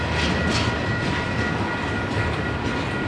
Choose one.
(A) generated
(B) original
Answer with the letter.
B